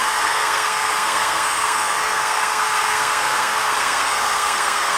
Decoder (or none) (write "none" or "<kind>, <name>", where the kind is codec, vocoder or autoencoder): codec, SNAC